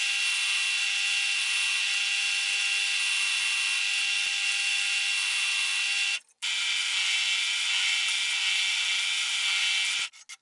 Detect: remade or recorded recorded